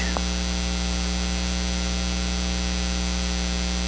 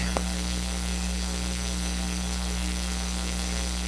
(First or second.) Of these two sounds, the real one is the first